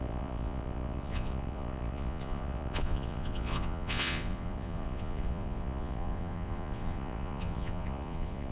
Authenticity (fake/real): fake